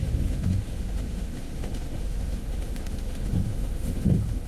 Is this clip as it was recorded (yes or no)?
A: no